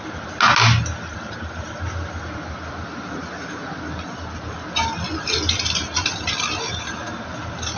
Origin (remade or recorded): recorded